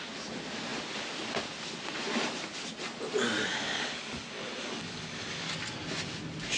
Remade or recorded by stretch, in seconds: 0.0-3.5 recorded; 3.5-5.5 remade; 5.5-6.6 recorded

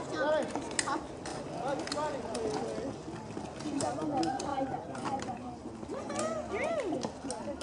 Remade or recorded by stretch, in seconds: 0.0-4.5 recorded; 4.5-6.7 remade; 6.7-7.6 recorded

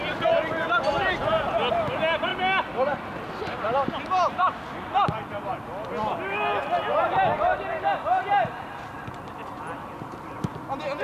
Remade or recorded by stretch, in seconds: 0.0-11.0 recorded

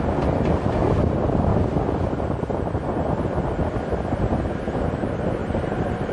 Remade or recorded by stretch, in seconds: 0.0-5.4 recorded; 5.4-6.1 remade

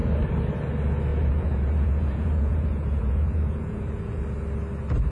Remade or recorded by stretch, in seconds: 0.0-1.1 recorded; 1.1-4.2 remade; 4.2-5.1 recorded